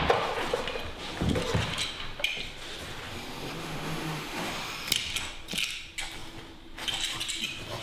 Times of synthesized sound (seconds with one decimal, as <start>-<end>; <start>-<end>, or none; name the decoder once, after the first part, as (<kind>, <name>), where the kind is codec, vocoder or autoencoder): 3.6-4.5 (autoencoder, DAC-VAE)